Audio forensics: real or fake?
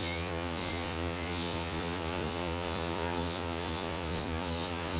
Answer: fake